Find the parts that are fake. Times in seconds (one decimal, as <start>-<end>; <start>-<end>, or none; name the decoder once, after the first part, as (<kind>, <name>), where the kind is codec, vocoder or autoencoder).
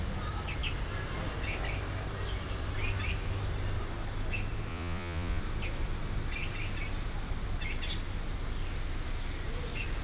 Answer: 4.7-5.4 (vocoder, Vocos)